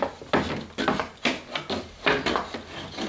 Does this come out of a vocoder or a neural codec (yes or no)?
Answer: no